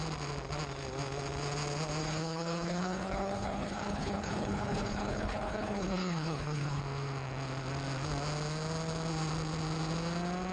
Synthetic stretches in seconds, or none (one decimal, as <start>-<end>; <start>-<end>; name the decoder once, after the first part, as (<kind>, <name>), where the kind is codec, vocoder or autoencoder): 2.0-6.8 (codec, HILCodec)